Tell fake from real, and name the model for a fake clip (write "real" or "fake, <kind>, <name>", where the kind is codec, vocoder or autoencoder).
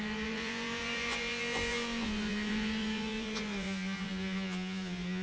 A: fake, vocoder, Vocos